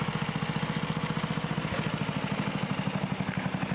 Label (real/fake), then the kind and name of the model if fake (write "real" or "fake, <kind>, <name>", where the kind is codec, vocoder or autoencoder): real